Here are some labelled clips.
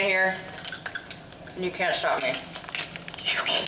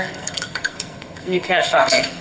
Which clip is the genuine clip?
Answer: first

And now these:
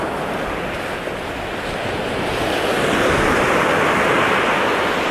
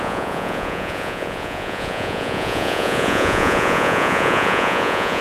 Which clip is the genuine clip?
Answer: first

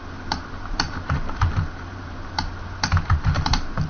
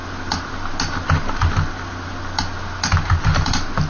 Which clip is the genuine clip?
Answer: second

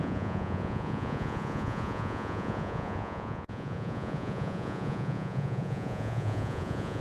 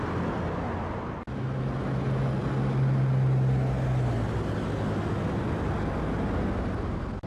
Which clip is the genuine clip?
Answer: second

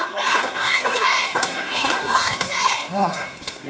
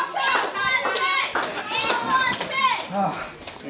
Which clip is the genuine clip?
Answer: second